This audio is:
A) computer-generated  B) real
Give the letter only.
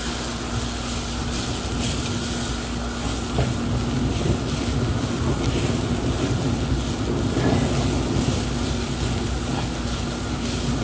B